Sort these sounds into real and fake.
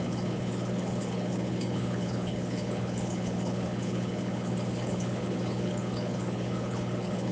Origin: fake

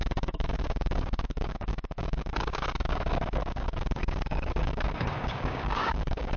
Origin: fake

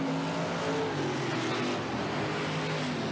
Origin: real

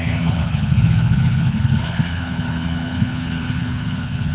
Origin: fake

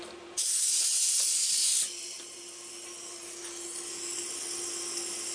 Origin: real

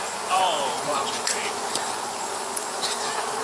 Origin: fake